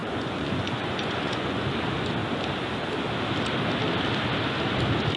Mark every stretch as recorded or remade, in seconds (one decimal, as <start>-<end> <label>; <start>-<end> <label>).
0.0-1.6 remade; 1.6-5.2 recorded